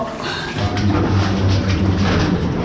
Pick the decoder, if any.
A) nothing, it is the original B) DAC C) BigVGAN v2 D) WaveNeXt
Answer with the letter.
A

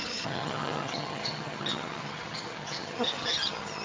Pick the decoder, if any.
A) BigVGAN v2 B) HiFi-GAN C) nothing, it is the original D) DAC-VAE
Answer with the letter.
B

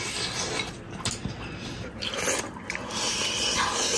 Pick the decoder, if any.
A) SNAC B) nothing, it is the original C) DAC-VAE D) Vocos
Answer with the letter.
B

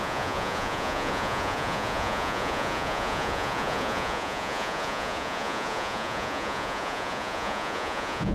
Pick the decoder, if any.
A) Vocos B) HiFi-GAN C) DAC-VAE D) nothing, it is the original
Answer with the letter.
A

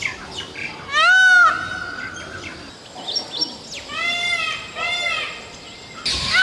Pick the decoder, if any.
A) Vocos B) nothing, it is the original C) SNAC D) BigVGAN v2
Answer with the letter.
B